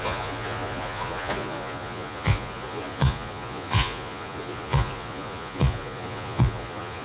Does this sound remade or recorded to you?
remade